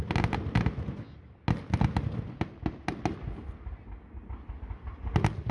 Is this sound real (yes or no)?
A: yes